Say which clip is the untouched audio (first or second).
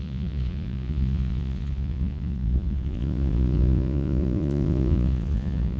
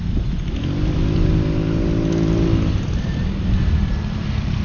second